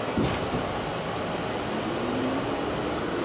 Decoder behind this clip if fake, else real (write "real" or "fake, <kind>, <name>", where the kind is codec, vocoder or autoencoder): real